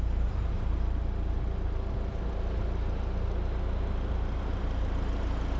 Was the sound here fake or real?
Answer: real